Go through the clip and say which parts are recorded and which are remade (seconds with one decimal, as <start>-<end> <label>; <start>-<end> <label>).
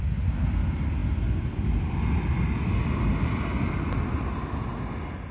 0.0-5.3 recorded